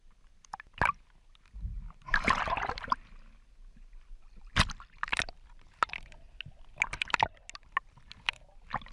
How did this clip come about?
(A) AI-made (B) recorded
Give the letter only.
B